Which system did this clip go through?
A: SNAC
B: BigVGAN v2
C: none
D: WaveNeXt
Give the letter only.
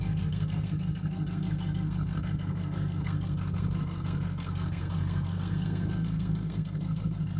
A